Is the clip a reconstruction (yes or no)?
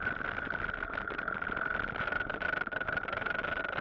no